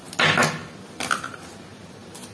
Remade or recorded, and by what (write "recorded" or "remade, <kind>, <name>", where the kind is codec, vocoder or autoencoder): recorded